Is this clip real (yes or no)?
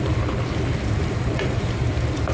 yes